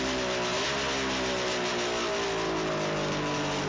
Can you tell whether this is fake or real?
real